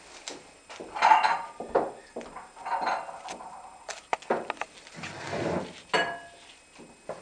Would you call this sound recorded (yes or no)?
yes